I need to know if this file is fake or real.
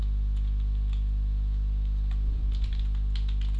real